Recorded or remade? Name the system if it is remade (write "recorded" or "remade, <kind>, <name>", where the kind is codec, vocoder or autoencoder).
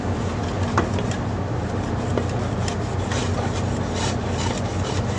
remade, vocoder, BigVGAN v2